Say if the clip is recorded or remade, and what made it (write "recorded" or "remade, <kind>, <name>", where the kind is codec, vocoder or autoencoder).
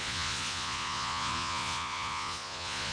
remade, vocoder, Vocos